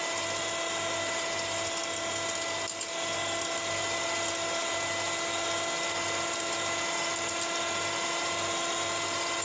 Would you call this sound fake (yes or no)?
no